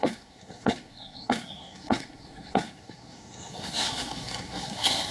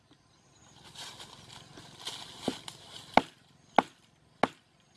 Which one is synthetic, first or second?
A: first